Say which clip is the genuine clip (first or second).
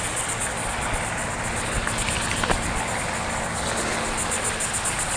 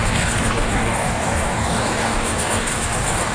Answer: first